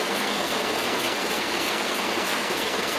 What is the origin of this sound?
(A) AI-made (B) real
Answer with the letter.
A